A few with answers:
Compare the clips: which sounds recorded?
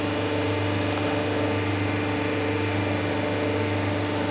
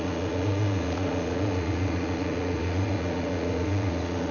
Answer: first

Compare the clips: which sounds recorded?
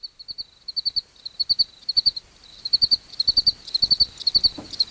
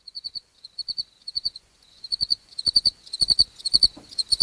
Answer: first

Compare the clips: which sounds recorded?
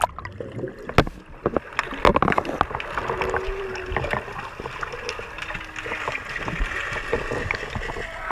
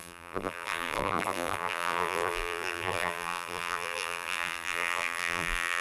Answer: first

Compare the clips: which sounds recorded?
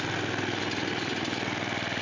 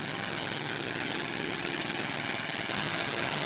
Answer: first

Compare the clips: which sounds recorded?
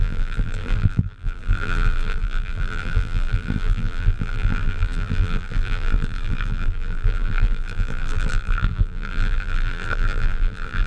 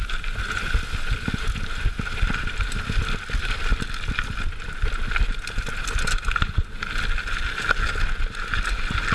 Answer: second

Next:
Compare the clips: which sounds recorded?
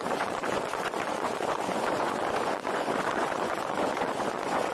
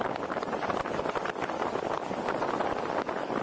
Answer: second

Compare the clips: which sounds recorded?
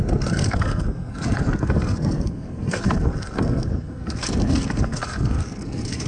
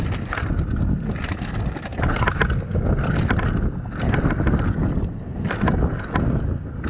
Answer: second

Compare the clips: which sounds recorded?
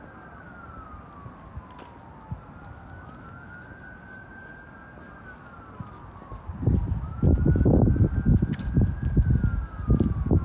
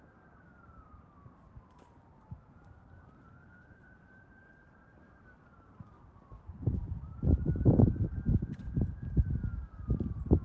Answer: first